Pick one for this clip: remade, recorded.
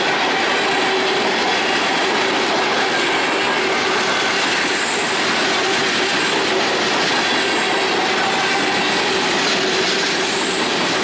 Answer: recorded